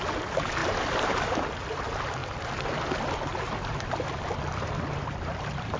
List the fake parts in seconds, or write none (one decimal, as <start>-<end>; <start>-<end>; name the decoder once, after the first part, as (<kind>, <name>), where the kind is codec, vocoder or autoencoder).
none